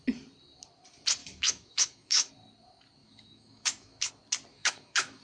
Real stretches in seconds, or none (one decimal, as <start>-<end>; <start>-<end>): 0.0-1.2; 2.3-3.0; 4.1-4.5